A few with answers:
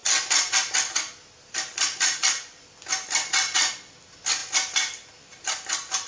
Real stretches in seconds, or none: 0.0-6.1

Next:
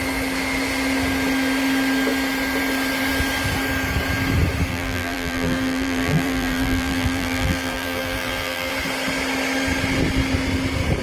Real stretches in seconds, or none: 0.0-4.7; 8.7-11.0

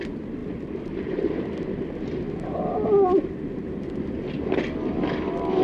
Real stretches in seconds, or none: 0.0-5.6

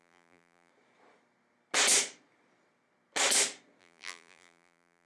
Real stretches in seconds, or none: 0.7-3.8

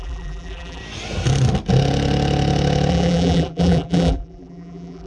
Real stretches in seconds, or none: 0.8-2.9

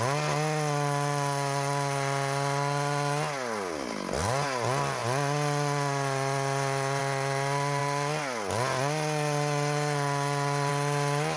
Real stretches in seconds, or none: 0.0-11.4

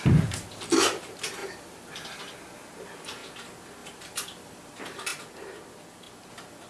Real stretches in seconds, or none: 0.0-1.4; 2.2-3.8; 4.6-6.7